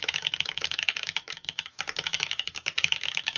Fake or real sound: fake